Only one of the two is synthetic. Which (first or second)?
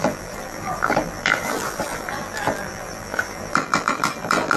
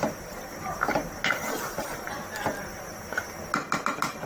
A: first